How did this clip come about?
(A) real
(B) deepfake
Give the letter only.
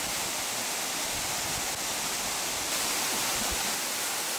A